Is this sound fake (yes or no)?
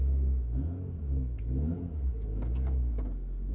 yes